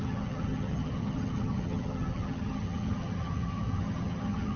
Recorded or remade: remade